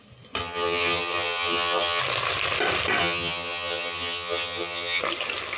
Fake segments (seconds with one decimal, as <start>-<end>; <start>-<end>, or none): 0.4-2.0; 3.0-5.0